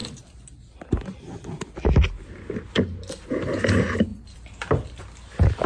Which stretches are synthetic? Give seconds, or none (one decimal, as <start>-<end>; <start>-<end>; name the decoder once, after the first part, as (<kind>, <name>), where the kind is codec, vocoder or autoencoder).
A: 4.1-5.0 (vocoder, BigVGAN v2)